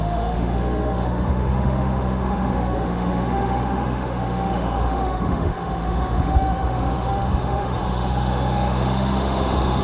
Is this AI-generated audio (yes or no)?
yes